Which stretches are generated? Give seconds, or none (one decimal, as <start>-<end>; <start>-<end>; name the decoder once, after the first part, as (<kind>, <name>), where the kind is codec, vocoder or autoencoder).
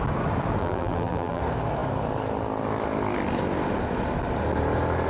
0.6-1.4 (vocoder, BigVGAN v2)